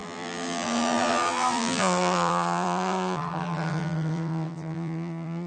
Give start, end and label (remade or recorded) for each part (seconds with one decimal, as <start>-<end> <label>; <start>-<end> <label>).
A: 0.0-5.5 remade